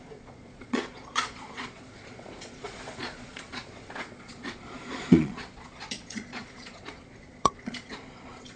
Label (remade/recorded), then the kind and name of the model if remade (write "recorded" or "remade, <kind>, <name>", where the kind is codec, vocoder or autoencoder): remade, vocoder, Vocos